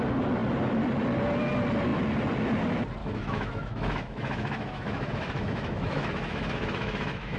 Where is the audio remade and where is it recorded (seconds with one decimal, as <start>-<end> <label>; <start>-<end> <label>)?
0.0-3.0 recorded; 3.0-7.4 remade